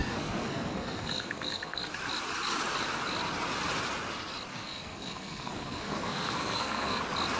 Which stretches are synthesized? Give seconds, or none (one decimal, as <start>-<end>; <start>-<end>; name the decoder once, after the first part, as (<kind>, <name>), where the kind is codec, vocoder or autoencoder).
0.0-1.9 (codec, SNAC); 4.5-7.0